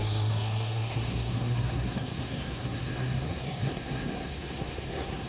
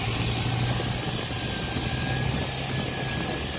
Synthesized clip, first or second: first